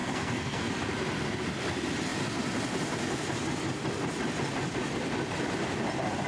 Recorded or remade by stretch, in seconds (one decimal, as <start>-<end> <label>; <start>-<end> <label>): 0.0-0.7 remade; 0.7-6.3 recorded